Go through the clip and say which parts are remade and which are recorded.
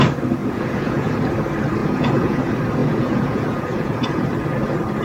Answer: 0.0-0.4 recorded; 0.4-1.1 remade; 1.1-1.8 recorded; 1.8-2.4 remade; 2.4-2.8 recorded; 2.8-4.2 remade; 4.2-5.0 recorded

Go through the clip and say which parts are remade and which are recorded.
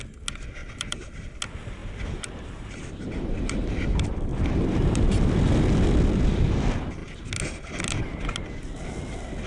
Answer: 0.0-0.6 recorded; 0.6-1.4 remade; 1.4-1.8 recorded; 1.8-3.7 remade; 3.7-4.3 recorded; 4.3-5.2 remade; 5.2-9.5 recorded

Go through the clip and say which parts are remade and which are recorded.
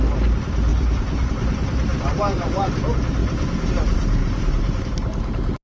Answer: 0.0-0.7 recorded; 0.7-1.3 remade; 1.3-1.9 recorded; 1.9-2.7 remade; 2.7-3.2 recorded; 3.2-3.7 remade; 3.7-4.2 recorded; 4.2-4.8 remade; 4.8-5.6 recorded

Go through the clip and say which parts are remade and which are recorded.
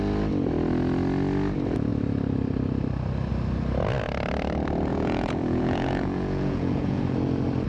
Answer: 0.0-4.9 recorded; 4.9-7.0 remade; 7.0-7.7 recorded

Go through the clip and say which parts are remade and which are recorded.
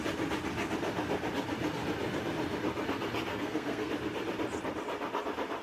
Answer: 0.0-3.3 recorded; 3.3-3.9 remade; 3.9-5.6 recorded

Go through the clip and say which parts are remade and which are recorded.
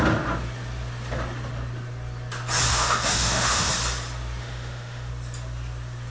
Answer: 0.0-2.7 recorded; 2.7-3.7 remade; 3.7-4.4 recorded; 4.4-5.1 remade; 5.1-6.1 recorded